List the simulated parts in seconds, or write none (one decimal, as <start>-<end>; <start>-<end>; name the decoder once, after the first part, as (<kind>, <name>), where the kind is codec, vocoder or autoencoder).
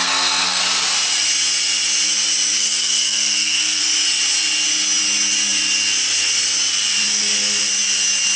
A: 0.0-0.6 (codec, SNAC); 2.6-3.8